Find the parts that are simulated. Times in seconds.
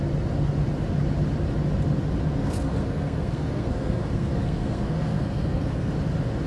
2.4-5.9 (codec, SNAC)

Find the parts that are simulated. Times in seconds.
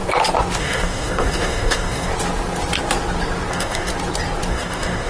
0.6-2.1 (codec, DAC); 3.5-3.9; 4.5-5.1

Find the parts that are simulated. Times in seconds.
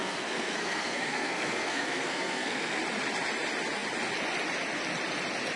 0.0-2.8 (codec, SNAC)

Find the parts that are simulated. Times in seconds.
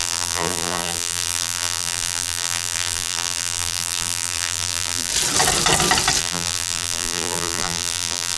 0.0-5.1 (vocoder, BigVGAN v2); 6.2-8.4